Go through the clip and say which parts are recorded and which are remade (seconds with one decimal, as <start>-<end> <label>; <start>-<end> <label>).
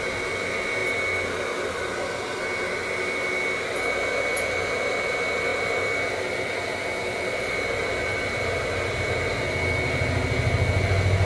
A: 0.0-11.2 recorded